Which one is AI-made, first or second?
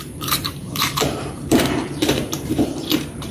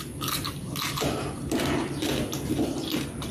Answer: first